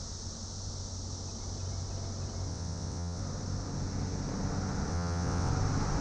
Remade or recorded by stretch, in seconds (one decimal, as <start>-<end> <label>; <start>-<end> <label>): 0.0-2.5 recorded; 2.5-3.2 remade; 3.2-4.9 recorded; 4.9-5.5 remade; 5.5-6.0 recorded